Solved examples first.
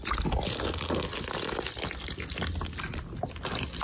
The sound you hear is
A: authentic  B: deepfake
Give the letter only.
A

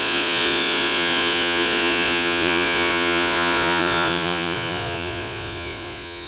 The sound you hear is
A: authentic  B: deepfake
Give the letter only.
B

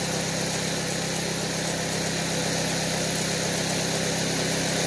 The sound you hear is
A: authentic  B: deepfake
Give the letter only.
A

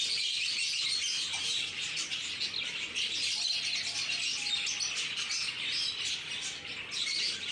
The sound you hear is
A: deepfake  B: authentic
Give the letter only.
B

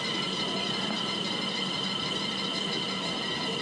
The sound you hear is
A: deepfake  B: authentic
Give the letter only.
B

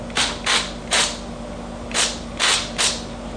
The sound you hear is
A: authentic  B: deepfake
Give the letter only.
A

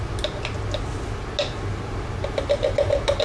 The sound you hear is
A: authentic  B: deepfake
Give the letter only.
A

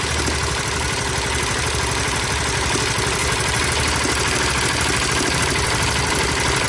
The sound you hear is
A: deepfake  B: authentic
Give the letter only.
B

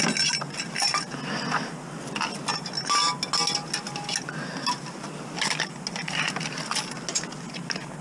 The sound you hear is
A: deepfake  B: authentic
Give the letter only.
B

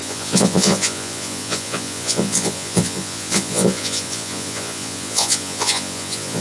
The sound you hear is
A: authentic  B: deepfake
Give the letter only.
B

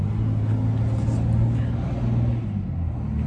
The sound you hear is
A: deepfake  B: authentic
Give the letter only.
B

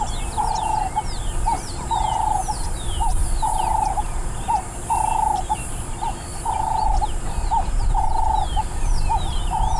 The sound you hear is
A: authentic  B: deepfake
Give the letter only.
A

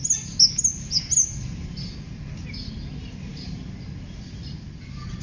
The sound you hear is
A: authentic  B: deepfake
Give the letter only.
A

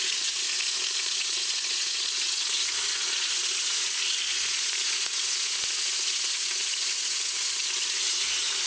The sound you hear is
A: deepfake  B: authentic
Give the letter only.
A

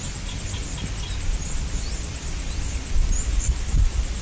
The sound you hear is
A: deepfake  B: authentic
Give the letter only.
B